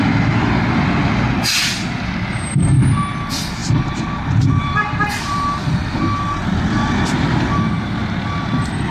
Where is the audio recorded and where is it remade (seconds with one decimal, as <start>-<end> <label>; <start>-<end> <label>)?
0.0-3.6 recorded; 3.6-7.6 remade; 7.6-8.9 recorded